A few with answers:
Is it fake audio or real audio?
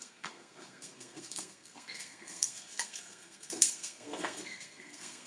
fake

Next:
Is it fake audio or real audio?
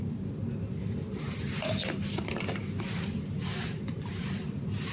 real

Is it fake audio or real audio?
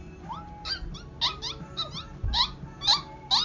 real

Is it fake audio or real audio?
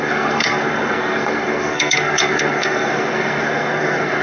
fake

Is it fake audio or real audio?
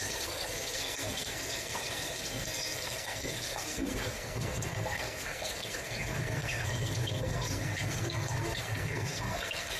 fake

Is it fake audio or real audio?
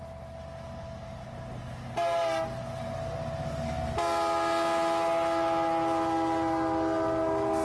real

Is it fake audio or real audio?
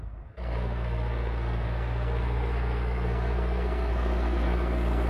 fake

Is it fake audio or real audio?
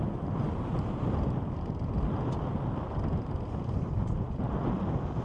real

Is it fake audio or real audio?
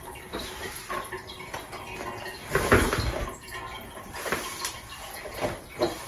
real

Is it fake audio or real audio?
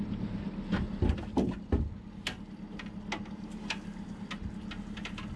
real